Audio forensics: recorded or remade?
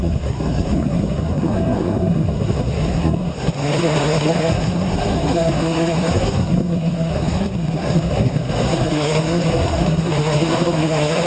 remade